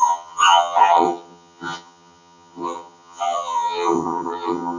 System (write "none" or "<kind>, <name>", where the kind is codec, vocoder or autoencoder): vocoder, HiFi-GAN